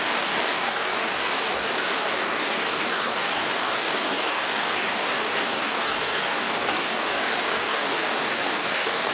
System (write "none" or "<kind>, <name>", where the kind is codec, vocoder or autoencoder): codec, DAC